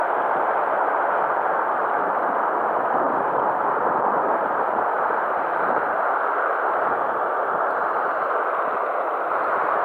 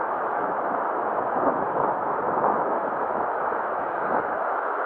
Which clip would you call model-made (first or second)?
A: second